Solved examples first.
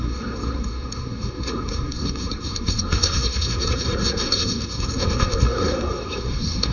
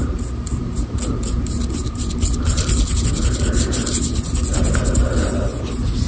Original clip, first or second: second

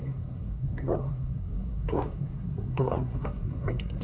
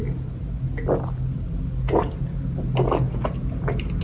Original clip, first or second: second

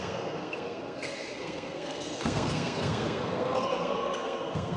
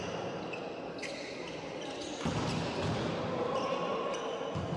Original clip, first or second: second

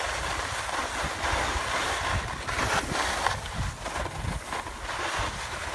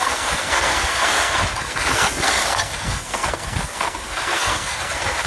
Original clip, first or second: first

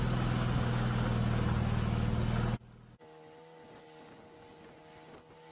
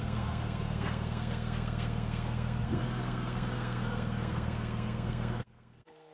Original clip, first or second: first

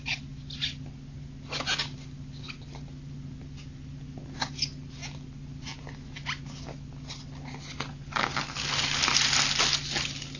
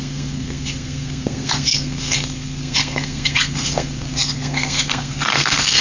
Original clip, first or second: first